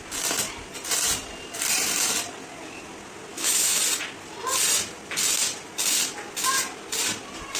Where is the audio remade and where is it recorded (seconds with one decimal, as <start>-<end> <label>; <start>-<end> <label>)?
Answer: 0.0-3.3 recorded; 3.3-3.8 remade; 3.8-7.6 recorded